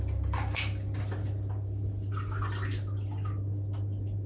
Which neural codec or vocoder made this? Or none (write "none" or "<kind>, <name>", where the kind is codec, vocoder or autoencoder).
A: none